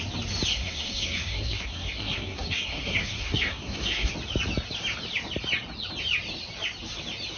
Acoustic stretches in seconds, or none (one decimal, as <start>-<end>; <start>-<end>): 0.0-0.5; 4.1-7.4